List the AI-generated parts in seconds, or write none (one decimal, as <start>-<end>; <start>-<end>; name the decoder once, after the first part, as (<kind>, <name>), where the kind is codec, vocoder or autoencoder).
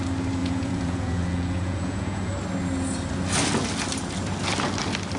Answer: 0.4-2.3 (vocoder, Vocos)